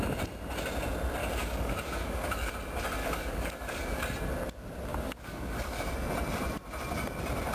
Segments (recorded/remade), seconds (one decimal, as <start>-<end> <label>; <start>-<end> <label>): 0.0-1.2 recorded; 1.2-2.5 remade; 2.5-3.0 recorded; 3.0-4.0 remade; 4.0-4.9 recorded; 4.9-5.9 remade; 5.9-7.5 recorded